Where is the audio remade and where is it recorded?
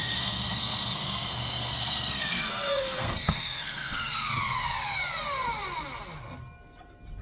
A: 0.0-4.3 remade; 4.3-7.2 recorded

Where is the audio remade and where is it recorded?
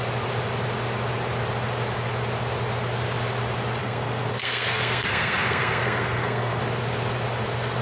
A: 0.0-3.8 recorded; 3.8-6.6 remade; 6.6-7.8 recorded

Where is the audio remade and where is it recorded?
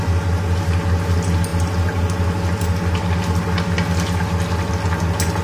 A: 0.0-5.4 recorded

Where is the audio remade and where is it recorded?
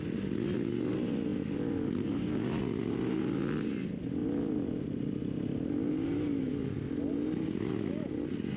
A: 0.0-8.6 recorded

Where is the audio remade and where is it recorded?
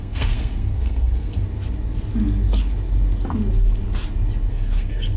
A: 0.0-1.4 remade; 1.4-4.5 recorded; 4.5-5.2 remade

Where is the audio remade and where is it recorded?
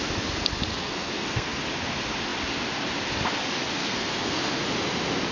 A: 0.0-0.7 recorded; 0.7-1.6 remade; 1.6-3.8 recorded; 3.8-4.6 remade; 4.6-5.3 recorded